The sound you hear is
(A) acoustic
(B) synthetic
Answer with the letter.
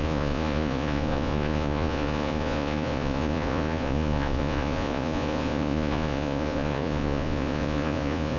B